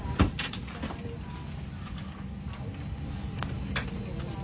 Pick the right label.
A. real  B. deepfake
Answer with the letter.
A